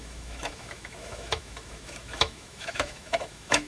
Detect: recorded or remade remade